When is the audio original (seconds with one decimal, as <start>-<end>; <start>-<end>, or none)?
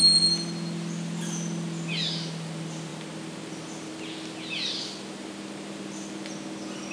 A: 0.0-6.9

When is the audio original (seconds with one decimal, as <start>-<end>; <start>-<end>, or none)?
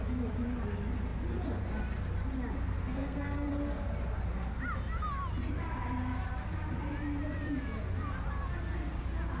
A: 0.0-2.8; 3.5-9.4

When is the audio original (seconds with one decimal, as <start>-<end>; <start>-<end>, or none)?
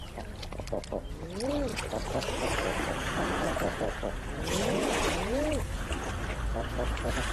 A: 0.0-1.7; 6.1-6.5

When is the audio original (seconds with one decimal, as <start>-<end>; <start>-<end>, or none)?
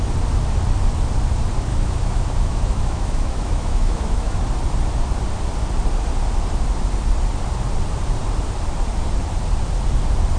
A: 0.0-1.7; 4.4-10.4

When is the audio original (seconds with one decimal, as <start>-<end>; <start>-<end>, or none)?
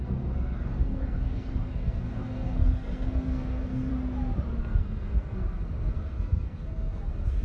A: 3.9-4.6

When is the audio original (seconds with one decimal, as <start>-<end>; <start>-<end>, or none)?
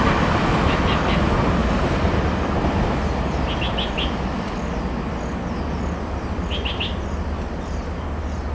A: 0.0-8.5